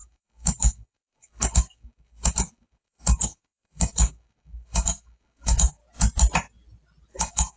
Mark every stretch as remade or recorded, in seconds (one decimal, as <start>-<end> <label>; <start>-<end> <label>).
0.0-5.8 remade; 5.8-7.1 recorded; 7.1-7.6 remade